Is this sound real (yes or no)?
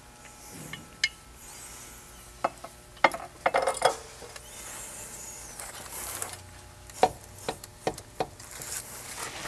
yes